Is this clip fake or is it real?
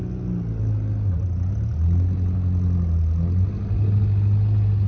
real